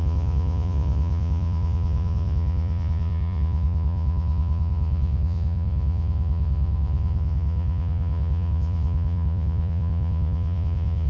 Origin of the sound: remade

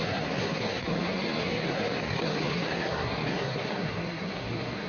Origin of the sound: remade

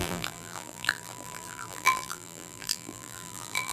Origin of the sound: remade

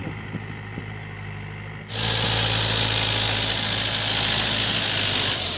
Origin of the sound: recorded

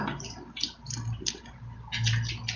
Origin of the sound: recorded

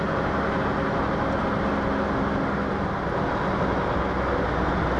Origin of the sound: recorded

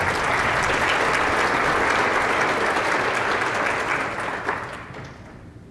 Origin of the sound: recorded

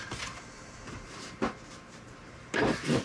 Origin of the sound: recorded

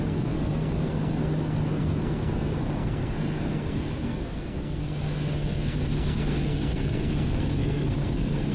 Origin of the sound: remade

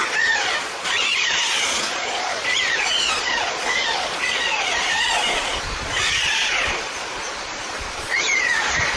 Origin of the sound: remade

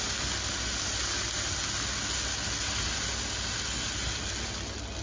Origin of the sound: recorded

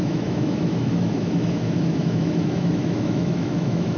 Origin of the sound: remade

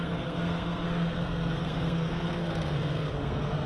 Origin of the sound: remade